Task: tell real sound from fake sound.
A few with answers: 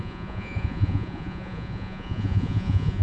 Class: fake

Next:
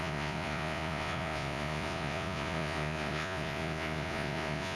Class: fake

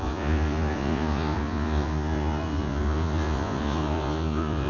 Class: fake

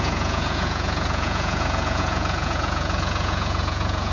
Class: fake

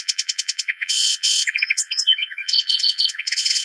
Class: fake